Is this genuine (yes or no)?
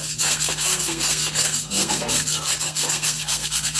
no